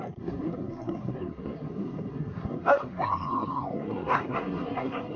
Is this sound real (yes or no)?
no